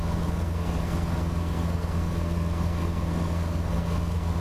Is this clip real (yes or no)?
no